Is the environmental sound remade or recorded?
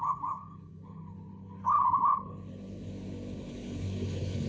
remade